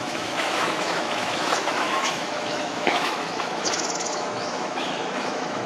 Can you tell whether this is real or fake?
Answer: fake